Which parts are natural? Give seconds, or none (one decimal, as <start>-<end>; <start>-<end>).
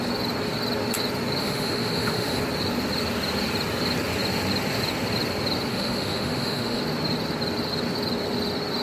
0.0-1.4; 2.4-5.7; 6.8-8.8